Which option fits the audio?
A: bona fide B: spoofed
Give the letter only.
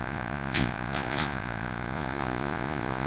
B